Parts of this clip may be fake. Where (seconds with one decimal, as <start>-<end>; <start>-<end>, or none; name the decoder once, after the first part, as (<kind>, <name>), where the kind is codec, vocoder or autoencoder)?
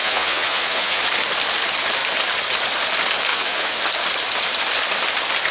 0.0-1.0 (vocoder, Vocos); 3.3-3.8